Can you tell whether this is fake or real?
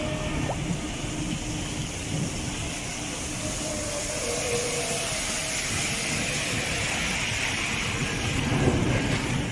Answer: real